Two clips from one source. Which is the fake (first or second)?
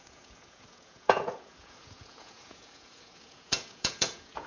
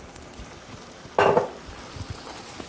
first